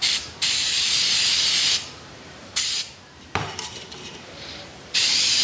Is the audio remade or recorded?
remade